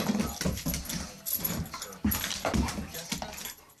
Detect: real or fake real